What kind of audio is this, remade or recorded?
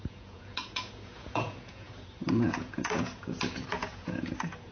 remade